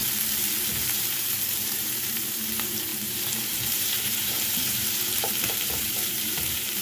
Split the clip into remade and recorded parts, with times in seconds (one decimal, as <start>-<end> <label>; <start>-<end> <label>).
0.0-1.0 recorded; 1.0-6.8 remade